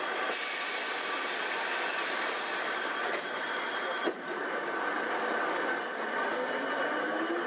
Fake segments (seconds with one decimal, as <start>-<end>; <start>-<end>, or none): 1.9-3.4; 4.0-4.5